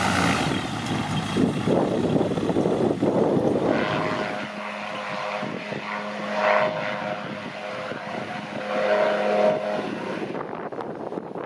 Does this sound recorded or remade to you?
recorded